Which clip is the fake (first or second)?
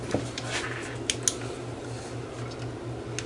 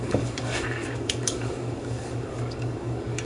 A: second